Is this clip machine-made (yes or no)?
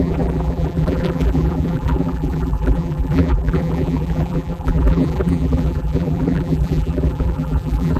yes